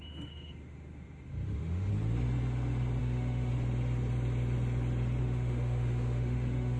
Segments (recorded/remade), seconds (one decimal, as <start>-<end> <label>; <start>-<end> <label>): 0.0-1.9 remade; 1.9-3.0 recorded; 3.0-3.5 remade; 3.5-5.2 recorded; 5.2-6.8 remade